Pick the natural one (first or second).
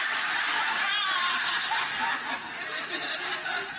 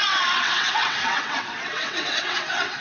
first